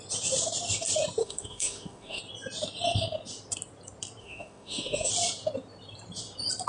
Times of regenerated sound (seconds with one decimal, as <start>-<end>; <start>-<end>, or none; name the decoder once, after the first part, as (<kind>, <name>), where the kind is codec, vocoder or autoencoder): 1.2-2.2 (autoencoder, DAC-VAE); 4.2-5.1